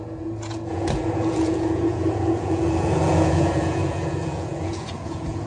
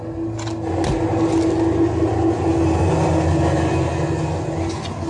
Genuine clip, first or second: second